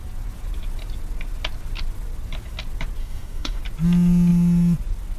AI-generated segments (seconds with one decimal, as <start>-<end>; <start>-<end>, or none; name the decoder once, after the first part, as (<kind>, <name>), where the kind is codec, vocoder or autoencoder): 3.0-3.6 (codec, DAC)